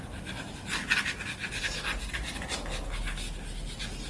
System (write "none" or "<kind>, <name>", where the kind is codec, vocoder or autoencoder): none